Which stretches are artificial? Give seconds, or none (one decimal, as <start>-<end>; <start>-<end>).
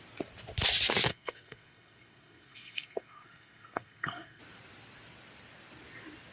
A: 1.1-4.4